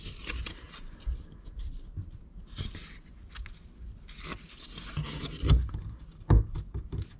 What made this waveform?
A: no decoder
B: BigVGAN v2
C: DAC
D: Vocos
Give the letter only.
A